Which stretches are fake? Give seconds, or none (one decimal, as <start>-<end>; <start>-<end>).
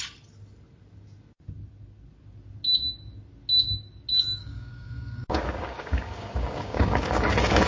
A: 4.4-7.7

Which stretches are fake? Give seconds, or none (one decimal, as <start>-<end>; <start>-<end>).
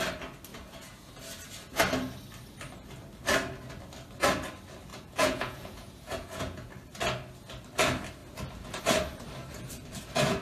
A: 0.5-1.1; 4.9-6.7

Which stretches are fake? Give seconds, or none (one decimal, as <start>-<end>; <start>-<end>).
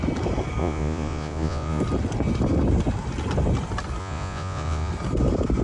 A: 0.6-1.8; 4.0-4.9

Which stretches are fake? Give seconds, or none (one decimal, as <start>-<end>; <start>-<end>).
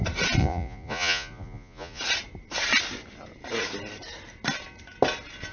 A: 0.4-2.0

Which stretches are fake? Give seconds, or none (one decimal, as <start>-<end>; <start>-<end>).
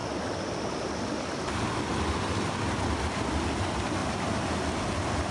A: none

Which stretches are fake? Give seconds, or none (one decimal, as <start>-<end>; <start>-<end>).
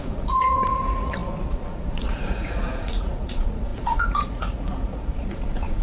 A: 0.0-5.8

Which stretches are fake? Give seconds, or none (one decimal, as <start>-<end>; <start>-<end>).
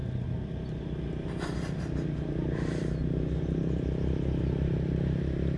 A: none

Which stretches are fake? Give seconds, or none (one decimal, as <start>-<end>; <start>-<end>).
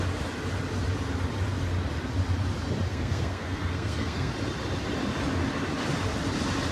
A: 2.9-4.3